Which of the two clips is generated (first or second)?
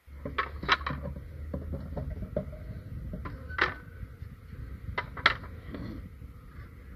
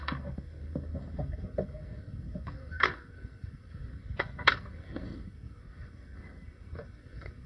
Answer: second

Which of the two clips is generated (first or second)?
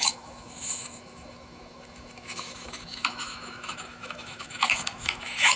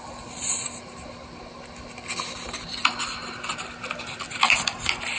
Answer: first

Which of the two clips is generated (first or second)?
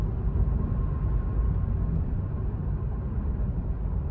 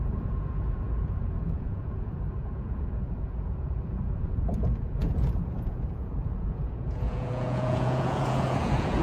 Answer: second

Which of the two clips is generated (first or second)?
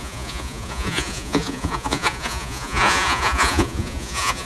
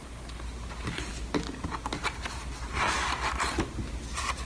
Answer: first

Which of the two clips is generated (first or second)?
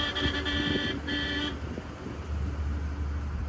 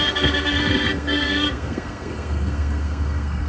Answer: second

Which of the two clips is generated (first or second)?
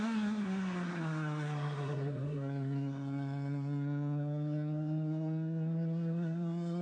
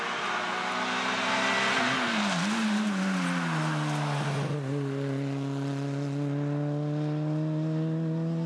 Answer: first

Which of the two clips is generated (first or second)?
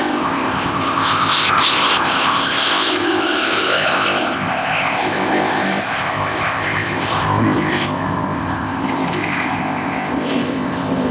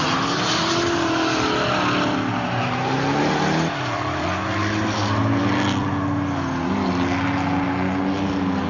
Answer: first